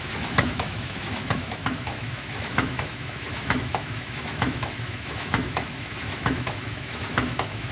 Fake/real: fake